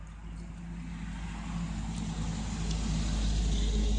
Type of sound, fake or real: real